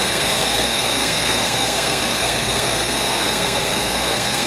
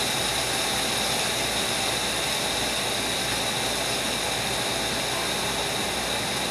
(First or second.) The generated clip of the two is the first